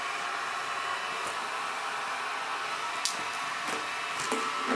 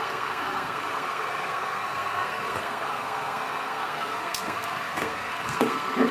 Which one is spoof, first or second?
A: second